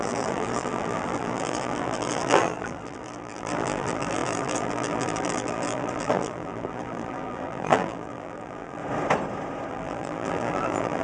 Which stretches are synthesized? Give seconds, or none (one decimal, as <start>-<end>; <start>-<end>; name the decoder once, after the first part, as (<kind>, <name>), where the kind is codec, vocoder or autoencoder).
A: 0.0-8.8 (vocoder, BigVGAN v2); 9.7-11.0

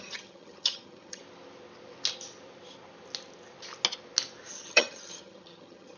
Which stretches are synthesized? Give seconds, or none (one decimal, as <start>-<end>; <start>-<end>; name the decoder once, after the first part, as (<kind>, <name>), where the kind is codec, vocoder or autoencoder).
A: 0.0-1.2 (vocoder, HiFi-GAN); 4.5-6.0

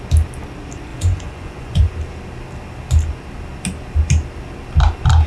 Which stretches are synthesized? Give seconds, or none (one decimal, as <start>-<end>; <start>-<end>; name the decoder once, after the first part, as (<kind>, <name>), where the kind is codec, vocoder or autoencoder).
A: 0.9-1.9 (vocoder, Vocos)

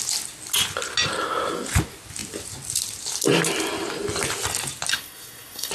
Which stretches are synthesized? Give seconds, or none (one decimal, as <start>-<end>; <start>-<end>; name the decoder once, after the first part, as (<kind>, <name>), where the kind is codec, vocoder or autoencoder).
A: 4.9-5.7 (codec, SNAC)

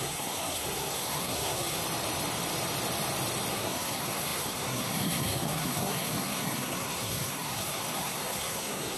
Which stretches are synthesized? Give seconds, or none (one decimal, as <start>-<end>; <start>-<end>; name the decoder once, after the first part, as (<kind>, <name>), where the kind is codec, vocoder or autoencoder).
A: 0.0-1.8 (codec, SNAC); 3.5-9.0

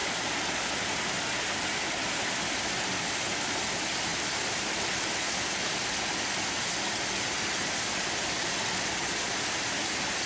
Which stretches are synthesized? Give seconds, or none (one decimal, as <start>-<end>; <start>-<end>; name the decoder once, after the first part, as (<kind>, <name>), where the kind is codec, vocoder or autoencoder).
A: none

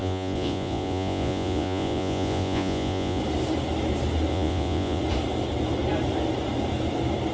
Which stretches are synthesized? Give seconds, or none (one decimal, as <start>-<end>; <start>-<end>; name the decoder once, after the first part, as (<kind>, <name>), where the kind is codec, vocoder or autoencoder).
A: 0.0-3.2 (vocoder, Vocos); 4.3-5.0

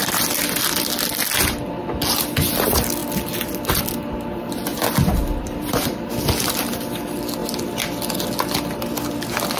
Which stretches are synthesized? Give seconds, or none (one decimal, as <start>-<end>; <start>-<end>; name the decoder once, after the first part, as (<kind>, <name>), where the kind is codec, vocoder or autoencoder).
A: 4.7-6.1 (vocoder, BigVGAN v2)